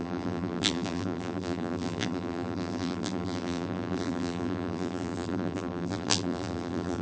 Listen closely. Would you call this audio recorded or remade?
remade